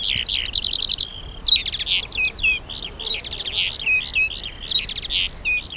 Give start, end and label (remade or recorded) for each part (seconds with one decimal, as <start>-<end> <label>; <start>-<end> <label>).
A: 0.0-5.8 recorded